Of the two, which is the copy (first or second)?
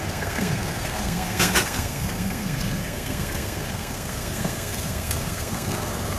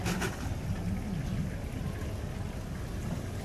first